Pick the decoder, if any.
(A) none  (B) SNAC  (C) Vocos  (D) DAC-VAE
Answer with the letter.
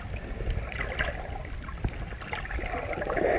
A